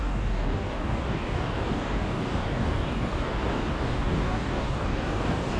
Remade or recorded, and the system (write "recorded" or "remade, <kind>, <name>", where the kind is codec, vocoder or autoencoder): remade, codec, DAC